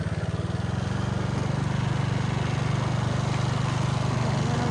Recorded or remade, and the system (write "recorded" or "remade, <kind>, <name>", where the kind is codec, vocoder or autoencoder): recorded